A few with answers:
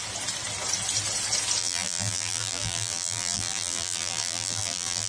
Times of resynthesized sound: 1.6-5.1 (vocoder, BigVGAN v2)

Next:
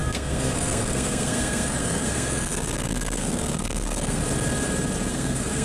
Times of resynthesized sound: 0.0-4.2 (codec, SNAC); 5.1-5.6

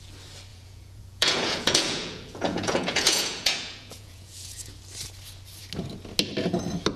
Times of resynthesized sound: 0.5-4.7 (vocoder, Vocos)

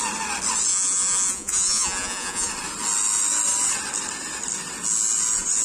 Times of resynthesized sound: 0.7-2.5 (vocoder, Vocos)